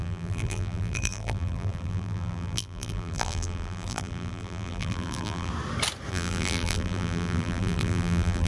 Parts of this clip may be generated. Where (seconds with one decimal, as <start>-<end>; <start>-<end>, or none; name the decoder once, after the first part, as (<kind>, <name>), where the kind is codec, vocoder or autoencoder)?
0.0-5.5 (vocoder, BigVGAN v2); 6.1-8.5